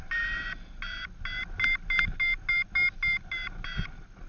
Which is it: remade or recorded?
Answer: recorded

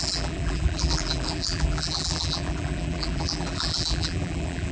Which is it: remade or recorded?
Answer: remade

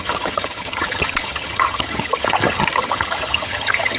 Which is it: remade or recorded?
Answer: remade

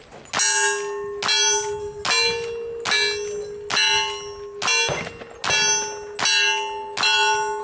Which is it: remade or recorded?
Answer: recorded